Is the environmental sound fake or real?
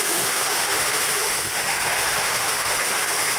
fake